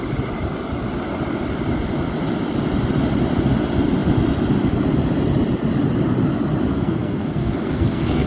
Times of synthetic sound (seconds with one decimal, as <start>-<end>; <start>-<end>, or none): 6.7-8.3